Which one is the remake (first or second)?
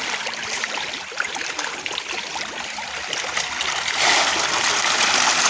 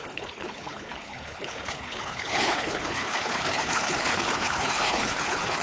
second